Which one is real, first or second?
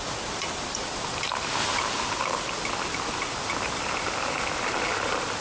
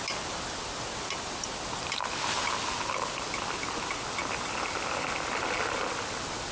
second